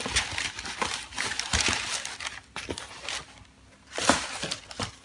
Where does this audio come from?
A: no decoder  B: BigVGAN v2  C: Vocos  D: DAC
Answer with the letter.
A